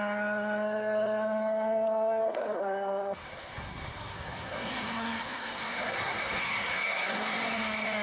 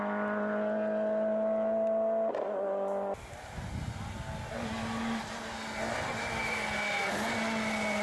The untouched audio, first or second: second